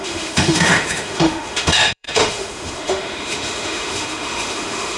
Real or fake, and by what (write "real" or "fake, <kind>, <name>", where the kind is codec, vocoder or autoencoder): fake, autoencoder, DAC-VAE